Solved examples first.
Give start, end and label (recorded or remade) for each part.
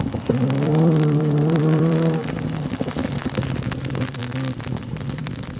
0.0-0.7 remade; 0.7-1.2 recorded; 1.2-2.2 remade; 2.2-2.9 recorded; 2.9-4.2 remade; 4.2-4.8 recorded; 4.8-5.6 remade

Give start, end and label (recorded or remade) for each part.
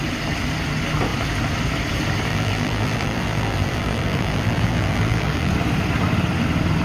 0.0-2.3 recorded; 2.3-5.5 remade; 5.5-6.8 recorded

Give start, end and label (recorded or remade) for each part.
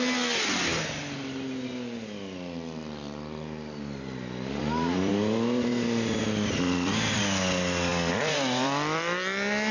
0.0-4.6 recorded; 4.6-5.1 remade; 5.1-5.7 recorded; 5.7-7.2 remade; 7.2-7.9 recorded; 7.9-9.7 remade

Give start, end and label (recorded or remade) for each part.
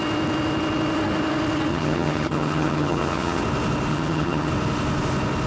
0.0-1.7 recorded; 1.7-3.4 remade; 3.4-3.9 recorded; 3.9-4.5 remade; 4.5-5.5 recorded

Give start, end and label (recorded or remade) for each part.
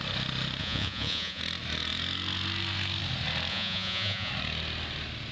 0.0-0.6 recorded; 0.6-1.4 remade; 1.4-3.5 recorded; 3.5-4.3 remade; 4.3-5.3 recorded